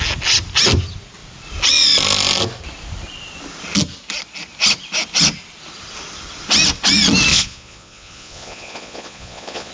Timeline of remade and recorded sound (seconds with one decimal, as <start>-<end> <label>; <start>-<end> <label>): 0.0-7.3 recorded; 7.3-9.7 remade